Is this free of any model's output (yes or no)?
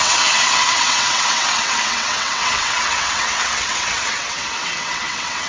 no